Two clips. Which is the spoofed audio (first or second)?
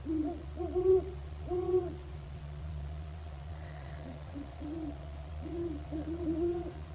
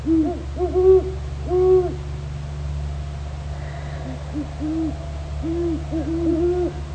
first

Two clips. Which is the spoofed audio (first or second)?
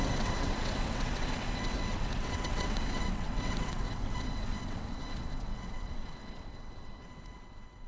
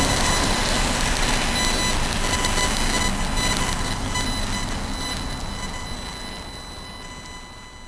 first